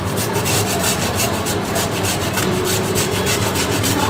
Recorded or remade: remade